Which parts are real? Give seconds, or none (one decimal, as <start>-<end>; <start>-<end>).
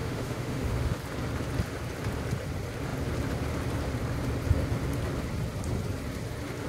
1.0-6.7